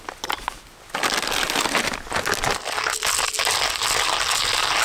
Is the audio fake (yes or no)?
no